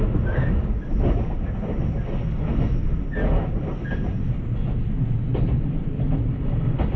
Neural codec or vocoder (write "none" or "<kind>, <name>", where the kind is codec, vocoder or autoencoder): none